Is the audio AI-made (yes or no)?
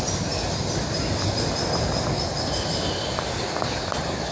no